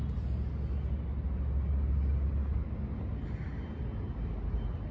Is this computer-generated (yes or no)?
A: no